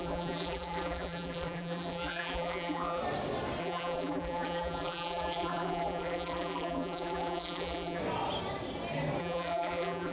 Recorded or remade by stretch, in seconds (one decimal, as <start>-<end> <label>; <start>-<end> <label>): 0.0-3.0 remade; 3.0-3.6 recorded; 3.6-8.0 remade; 8.0-9.2 recorded; 9.2-10.1 remade